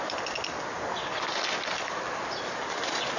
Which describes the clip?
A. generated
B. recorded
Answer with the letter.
B